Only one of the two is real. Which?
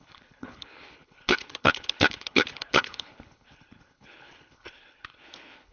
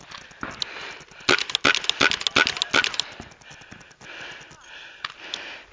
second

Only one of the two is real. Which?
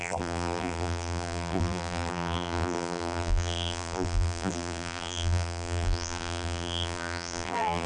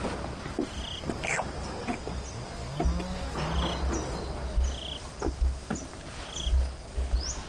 second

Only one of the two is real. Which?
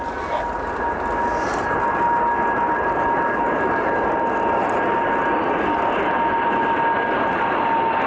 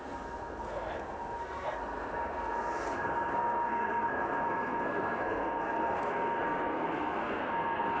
first